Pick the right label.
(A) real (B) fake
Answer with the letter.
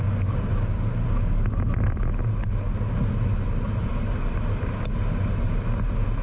A